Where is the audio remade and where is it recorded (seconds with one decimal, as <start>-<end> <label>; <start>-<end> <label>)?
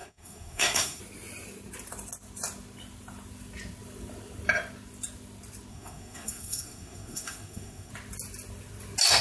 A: 0.0-1.0 remade; 1.0-5.7 recorded; 5.7-7.9 remade; 7.9-9.2 recorded